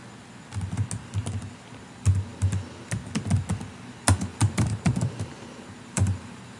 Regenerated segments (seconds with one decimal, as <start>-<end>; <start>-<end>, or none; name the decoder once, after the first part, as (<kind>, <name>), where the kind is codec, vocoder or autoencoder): 4.3-6.6 (vocoder, BigVGAN v2)